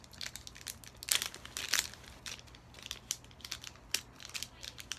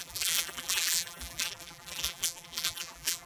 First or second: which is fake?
second